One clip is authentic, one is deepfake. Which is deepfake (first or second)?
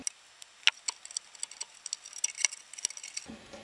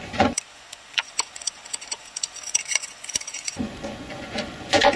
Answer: second